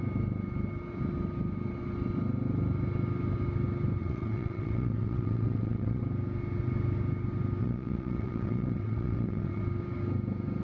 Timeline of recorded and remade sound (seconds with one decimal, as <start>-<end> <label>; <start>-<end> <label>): 0.0-4.0 recorded; 4.0-6.0 remade; 6.0-7.6 recorded; 7.6-9.6 remade; 9.6-10.6 recorded